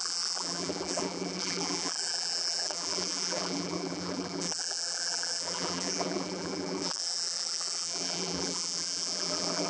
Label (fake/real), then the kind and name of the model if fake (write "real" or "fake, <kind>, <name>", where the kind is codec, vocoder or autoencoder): fake, vocoder, BigVGAN v2